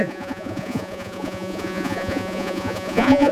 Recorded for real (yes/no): no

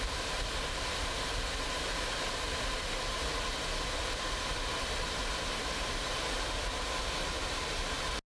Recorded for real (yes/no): yes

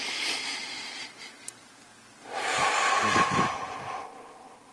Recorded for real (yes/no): yes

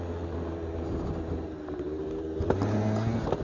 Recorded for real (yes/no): yes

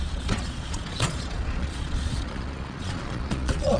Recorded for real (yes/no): no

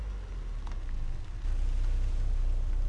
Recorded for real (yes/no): yes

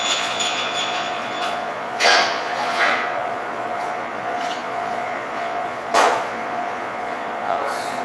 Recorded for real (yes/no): no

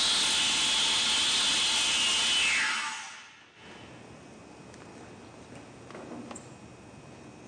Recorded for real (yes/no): yes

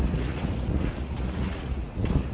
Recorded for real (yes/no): no